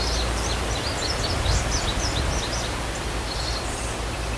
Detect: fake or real real